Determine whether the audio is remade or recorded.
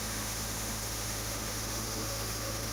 remade